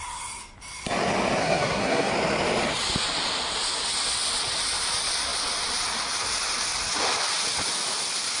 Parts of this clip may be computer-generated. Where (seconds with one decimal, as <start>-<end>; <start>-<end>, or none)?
1.4-2.1